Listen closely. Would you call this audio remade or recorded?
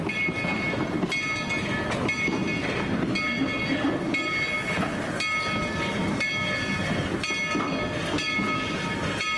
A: recorded